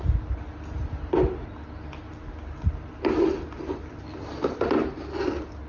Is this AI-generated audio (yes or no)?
no